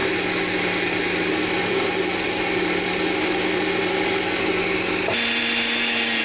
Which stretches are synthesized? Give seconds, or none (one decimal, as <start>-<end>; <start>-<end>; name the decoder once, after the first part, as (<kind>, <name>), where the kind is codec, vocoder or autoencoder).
none

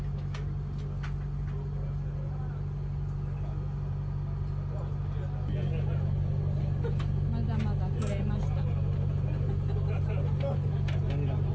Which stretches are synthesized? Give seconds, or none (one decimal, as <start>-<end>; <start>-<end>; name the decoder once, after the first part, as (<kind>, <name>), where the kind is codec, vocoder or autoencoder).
none

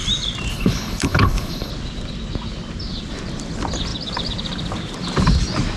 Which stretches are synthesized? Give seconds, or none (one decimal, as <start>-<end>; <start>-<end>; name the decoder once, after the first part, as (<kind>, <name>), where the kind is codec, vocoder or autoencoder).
0.5-1.7 (codec, HILCodec)

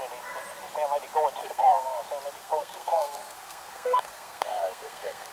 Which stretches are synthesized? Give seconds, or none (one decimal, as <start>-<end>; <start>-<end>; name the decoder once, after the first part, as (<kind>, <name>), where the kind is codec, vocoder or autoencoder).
1.4-2.0 (codec, SNAC); 2.4-5.3